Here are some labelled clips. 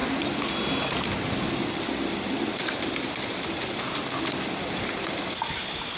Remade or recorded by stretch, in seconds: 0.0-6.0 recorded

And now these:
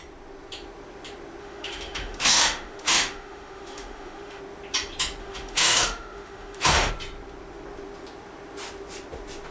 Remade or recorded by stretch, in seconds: 0.0-1.4 recorded; 1.4-4.4 remade; 4.4-5.2 recorded; 5.2-6.9 remade; 6.9-9.5 recorded

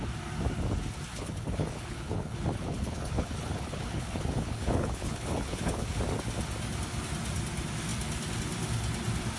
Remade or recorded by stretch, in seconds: 0.0-1.1 recorded; 1.1-6.0 remade; 6.0-9.4 recorded

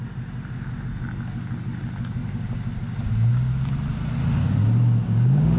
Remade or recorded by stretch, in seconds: 0.0-4.6 recorded; 4.6-5.6 remade